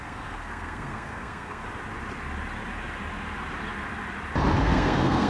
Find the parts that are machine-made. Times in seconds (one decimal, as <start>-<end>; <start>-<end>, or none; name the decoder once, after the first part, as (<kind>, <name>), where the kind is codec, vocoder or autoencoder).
0.0-1.6 (codec, SNAC); 4.6-5.3